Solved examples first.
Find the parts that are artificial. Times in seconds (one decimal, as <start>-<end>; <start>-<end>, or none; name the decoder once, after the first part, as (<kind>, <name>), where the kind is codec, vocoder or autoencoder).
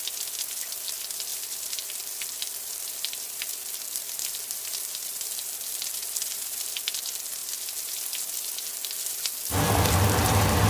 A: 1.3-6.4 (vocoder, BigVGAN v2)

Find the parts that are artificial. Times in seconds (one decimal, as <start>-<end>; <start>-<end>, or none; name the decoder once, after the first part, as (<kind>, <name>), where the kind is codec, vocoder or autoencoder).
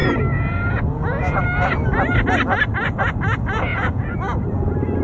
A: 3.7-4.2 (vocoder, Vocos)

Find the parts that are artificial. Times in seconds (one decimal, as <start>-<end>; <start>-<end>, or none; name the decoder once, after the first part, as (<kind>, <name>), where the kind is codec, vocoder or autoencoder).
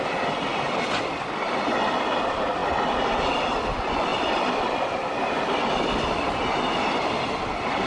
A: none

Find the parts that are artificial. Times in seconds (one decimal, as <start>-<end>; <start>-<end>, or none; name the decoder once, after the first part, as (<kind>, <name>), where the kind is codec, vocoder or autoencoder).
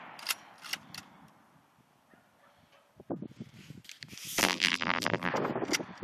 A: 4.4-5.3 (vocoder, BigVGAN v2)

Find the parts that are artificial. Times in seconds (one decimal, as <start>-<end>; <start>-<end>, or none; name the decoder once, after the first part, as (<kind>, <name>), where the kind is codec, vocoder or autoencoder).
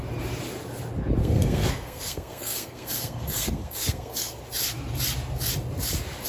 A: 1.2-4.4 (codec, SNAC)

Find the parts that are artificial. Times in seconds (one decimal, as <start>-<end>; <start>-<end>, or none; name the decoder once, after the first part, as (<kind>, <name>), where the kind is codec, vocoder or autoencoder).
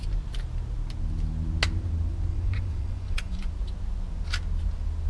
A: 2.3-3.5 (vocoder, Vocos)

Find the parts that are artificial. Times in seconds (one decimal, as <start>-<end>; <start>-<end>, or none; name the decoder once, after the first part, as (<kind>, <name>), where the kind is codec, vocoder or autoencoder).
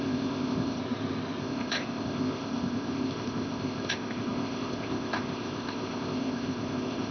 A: 0.0-0.8 (codec, ZipCodec); 1.4-7.1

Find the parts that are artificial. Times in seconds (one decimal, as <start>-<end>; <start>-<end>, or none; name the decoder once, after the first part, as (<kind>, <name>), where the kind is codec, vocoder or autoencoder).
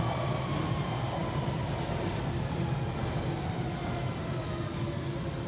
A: none